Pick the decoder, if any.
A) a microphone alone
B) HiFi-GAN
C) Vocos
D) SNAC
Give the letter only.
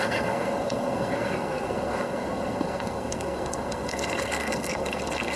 D